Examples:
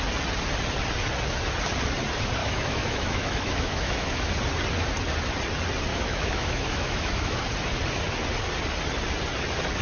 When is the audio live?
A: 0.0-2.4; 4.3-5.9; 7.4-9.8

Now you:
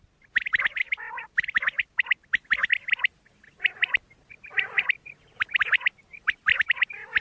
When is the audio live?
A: 0.0-7.2

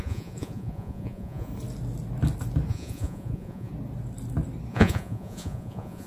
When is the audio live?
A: 1.5-2.7; 3.7-4.7

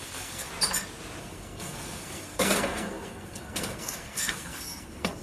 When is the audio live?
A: 0.5-1.2

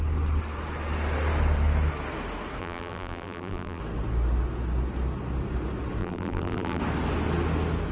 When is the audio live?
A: 0.0-2.6; 3.8-6.0; 6.8-7.9

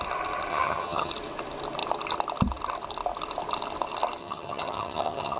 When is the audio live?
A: 0.0-0.5; 1.1-4.2

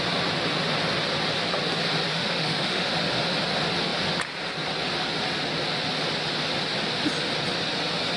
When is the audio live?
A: 0.0-2.1; 2.9-8.2

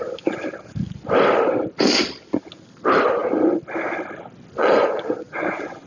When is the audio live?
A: 0.0-4.6